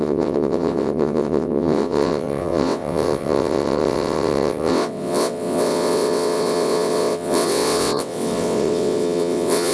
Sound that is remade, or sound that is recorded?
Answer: remade